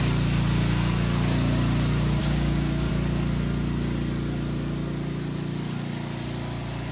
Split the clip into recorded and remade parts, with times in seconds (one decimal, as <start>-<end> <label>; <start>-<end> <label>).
0.0-2.2 recorded; 2.2-2.9 remade; 2.9-6.9 recorded

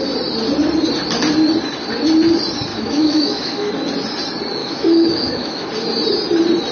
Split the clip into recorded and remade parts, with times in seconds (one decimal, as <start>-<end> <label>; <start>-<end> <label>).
0.0-2.7 recorded; 2.7-3.7 remade; 3.7-4.6 recorded; 4.6-5.7 remade; 5.7-6.7 recorded

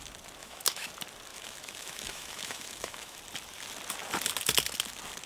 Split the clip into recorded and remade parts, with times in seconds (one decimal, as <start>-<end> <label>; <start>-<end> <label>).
0.0-0.4 recorded; 0.4-0.9 remade; 0.9-1.3 recorded; 1.3-3.2 remade; 3.2-5.3 recorded